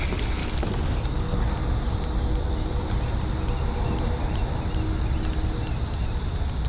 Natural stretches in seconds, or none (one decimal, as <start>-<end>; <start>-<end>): 0.0-0.4; 1.5-6.7